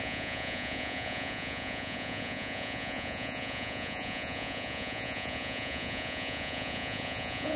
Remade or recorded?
remade